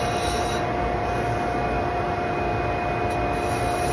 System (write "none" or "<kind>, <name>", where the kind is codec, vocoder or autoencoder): none